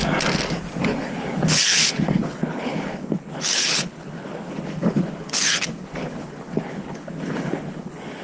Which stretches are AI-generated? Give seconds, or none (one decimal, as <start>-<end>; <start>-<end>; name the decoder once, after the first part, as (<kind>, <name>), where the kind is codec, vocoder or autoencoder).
0.8-8.2 (codec, HILCodec)